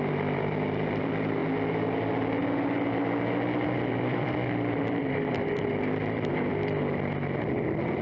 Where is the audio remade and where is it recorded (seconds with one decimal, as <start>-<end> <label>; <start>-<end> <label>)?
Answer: 0.0-1.4 remade; 1.4-3.9 recorded; 3.9-8.0 remade